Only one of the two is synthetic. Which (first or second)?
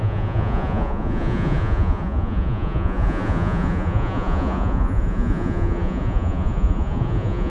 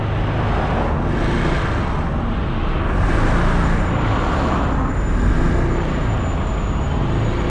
first